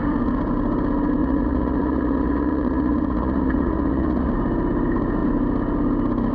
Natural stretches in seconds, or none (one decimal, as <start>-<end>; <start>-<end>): 0.0-1.2; 4.3-6.3